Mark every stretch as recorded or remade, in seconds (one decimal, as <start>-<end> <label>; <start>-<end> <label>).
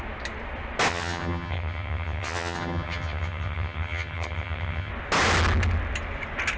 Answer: 0.0-0.9 recorded; 0.9-4.9 remade; 4.9-6.6 recorded